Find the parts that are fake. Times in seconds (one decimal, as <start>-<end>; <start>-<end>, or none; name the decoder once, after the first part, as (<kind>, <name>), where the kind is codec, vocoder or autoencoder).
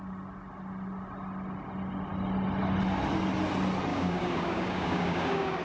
3.9-5.6 (codec, DAC)